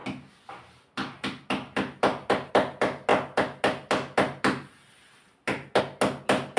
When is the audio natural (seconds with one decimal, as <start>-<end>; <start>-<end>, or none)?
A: 0.0-6.6